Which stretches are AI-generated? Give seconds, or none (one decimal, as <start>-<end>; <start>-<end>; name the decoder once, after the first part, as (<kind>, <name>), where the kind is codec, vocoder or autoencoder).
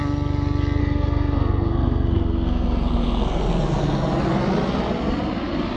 0.8-3.4 (codec, SNAC)